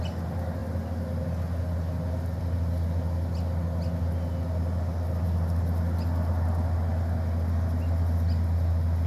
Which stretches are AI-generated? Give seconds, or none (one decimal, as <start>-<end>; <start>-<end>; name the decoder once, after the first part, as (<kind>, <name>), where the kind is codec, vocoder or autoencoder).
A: none